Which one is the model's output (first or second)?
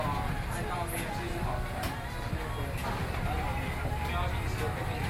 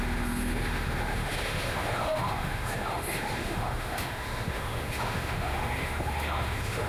second